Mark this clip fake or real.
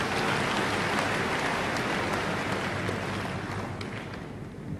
real